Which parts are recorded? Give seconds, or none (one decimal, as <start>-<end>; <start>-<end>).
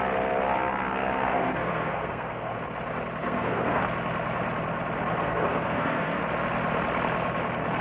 0.0-1.3; 2.6-3.2; 3.8-5.1; 6.2-7.8